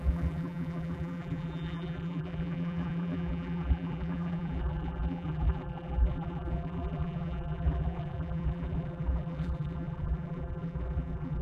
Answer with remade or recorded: remade